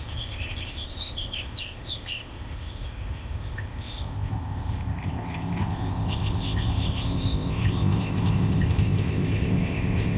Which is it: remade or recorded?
remade